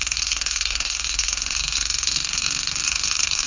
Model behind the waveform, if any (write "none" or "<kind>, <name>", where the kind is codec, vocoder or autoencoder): codec, SNAC